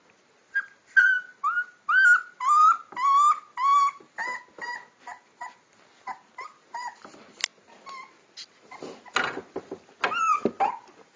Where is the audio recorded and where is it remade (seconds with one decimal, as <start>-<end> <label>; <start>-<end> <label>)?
0.0-11.2 recorded